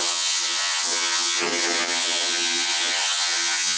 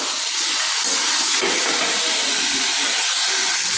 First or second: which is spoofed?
first